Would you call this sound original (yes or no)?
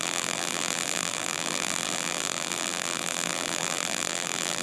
no